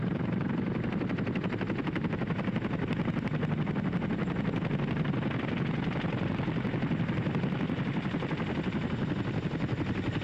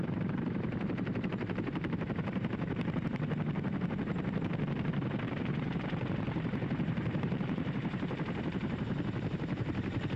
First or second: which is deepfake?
second